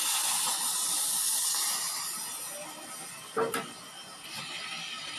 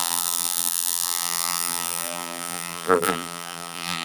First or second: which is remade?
second